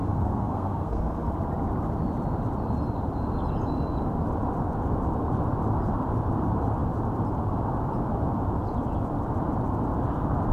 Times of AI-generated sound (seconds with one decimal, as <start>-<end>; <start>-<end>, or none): 0.0-1.3